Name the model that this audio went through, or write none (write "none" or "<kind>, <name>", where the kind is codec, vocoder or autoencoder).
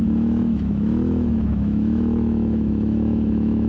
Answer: autoencoder, DAC-VAE